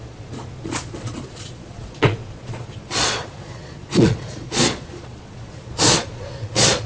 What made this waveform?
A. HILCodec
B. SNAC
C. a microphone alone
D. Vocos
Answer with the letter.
D